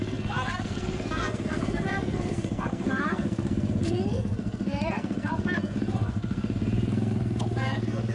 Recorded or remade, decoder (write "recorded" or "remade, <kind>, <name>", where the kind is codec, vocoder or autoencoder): remade, codec, SNAC